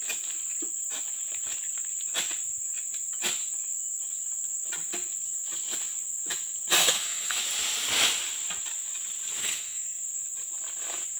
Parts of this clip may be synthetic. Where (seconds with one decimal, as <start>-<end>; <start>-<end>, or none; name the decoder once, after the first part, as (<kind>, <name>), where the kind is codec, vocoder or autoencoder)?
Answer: 6.8-7.4 (codec, SNAC); 9.4-10.0